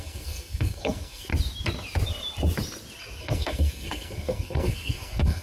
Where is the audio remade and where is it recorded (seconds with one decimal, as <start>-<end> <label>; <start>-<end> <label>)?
0.0-1.3 remade; 1.3-3.2 recorded; 3.2-5.4 remade